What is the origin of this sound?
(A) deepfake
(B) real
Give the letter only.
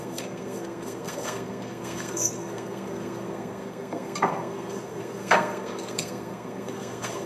A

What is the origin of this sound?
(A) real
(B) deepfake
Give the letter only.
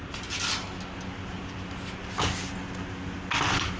A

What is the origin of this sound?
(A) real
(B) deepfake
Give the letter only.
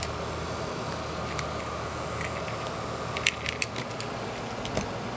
A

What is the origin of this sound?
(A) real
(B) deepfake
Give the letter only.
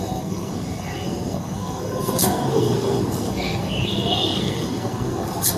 B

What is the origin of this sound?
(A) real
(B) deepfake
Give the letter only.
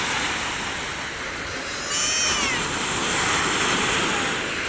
A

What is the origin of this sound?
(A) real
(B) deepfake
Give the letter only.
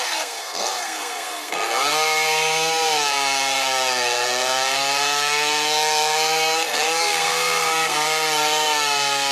B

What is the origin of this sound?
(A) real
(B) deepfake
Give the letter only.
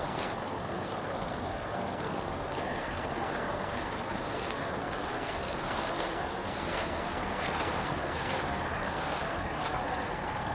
B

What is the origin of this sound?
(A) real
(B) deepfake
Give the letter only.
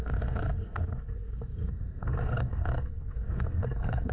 B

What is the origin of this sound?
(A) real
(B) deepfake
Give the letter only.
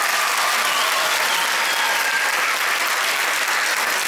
A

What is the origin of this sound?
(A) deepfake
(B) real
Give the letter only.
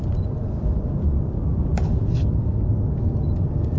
B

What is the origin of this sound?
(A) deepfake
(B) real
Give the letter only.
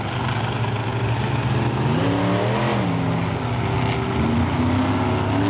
B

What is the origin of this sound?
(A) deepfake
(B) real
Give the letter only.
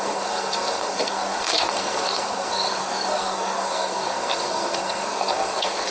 A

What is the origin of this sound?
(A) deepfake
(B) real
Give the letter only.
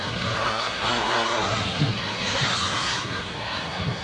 A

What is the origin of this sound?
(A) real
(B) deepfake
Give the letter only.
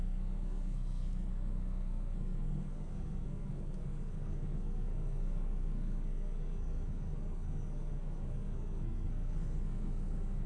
B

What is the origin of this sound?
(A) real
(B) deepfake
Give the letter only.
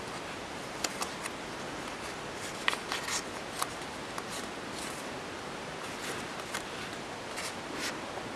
A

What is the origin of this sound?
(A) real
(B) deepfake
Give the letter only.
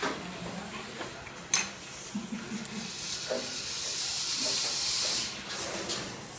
A